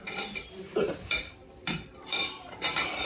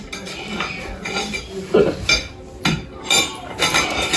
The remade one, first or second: first